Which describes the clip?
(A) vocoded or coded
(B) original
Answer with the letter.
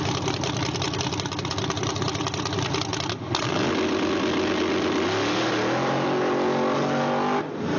B